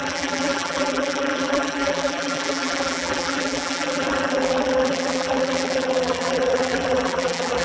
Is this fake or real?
fake